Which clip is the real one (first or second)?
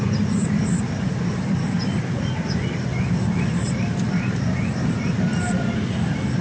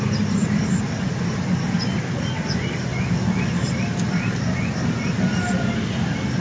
second